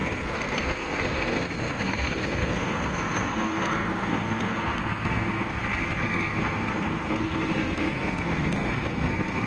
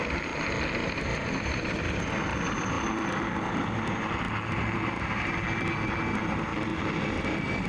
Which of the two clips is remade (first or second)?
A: first